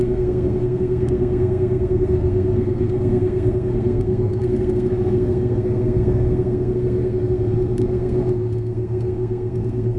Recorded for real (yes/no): no